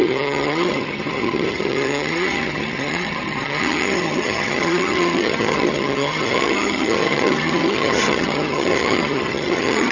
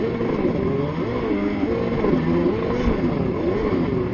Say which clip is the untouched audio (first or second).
second